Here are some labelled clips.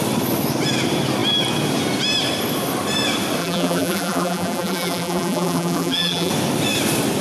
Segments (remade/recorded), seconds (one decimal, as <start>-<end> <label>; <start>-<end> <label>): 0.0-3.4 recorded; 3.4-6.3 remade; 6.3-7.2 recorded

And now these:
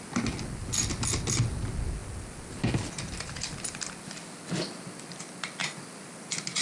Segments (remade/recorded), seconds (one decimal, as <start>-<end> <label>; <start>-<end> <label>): 0.0-6.6 recorded

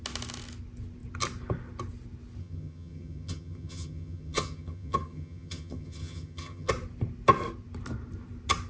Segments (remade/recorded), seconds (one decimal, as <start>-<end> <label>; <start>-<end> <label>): 0.0-2.4 recorded; 2.4-6.7 remade; 6.7-8.7 recorded

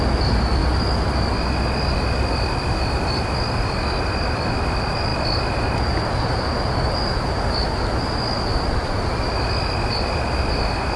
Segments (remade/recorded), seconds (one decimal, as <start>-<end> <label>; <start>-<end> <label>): 0.0-11.0 recorded

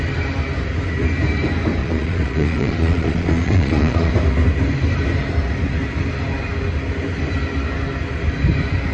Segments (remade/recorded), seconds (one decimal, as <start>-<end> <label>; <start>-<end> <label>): 0.0-1.8 recorded; 1.8-4.1 remade; 4.1-8.9 recorded

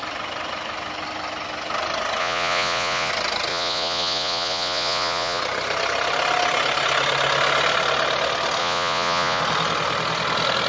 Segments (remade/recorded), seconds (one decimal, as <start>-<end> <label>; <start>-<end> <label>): 0.0-2.2 recorded; 2.2-3.1 remade; 3.1-3.5 recorded; 3.5-5.4 remade; 5.4-8.6 recorded; 8.6-9.4 remade; 9.4-10.7 recorded

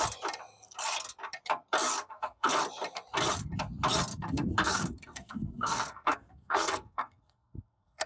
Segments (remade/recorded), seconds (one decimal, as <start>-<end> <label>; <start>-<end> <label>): 0.0-2.0 recorded; 2.0-2.5 remade; 2.5-4.1 recorded; 4.1-8.1 remade